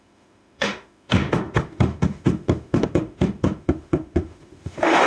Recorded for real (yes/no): no